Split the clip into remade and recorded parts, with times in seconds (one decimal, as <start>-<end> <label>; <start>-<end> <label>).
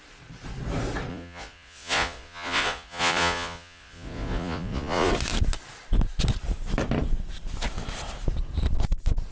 0.0-1.1 recorded; 1.1-5.1 remade; 5.1-9.3 recorded